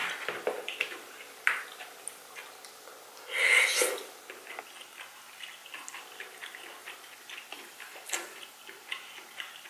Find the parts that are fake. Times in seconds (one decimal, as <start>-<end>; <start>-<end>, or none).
0.0-1.6